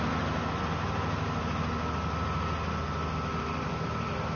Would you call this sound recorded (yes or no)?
yes